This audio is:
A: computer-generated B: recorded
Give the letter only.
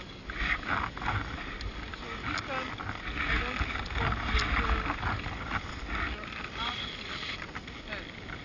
B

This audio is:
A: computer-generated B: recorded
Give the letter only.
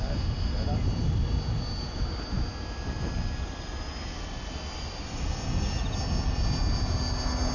B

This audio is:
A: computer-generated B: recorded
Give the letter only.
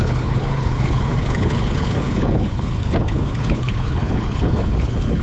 A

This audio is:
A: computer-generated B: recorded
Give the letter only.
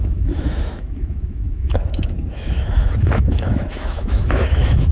A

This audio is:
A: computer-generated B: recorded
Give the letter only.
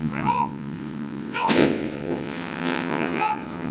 A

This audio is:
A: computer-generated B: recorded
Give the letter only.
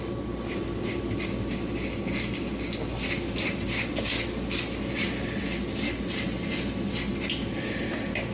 B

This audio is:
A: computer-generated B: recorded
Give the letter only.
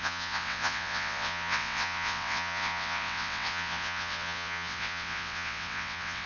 A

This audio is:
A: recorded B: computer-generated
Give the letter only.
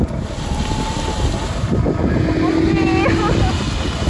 A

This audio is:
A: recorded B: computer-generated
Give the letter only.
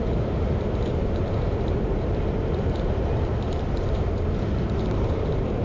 B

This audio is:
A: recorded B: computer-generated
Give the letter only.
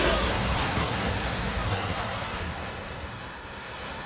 B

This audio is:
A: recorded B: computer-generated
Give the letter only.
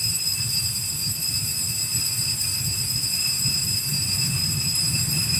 A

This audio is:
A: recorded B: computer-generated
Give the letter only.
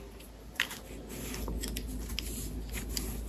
A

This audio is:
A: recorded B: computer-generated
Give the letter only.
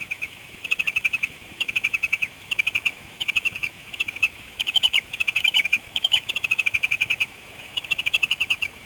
B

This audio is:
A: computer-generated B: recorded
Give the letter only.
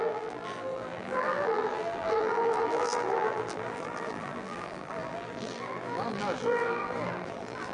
A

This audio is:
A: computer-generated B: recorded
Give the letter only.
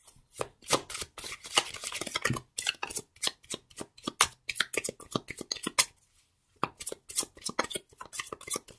B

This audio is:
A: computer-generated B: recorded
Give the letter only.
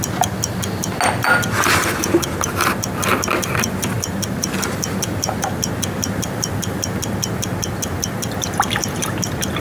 B